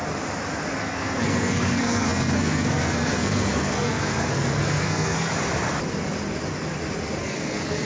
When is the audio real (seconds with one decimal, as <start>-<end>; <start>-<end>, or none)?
0.0-0.8; 5.3-7.2